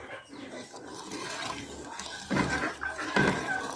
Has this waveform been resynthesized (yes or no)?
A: no